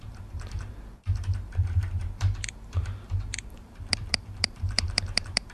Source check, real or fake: fake